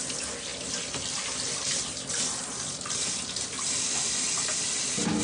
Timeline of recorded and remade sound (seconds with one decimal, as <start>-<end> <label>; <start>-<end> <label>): 0.0-5.2 recorded